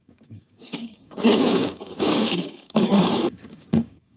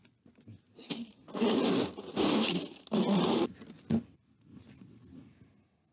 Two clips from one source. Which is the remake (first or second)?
first